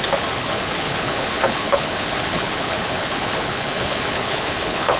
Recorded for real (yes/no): no